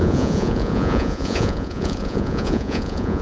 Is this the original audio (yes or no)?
no